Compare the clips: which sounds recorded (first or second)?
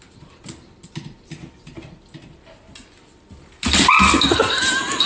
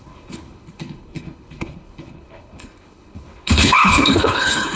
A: first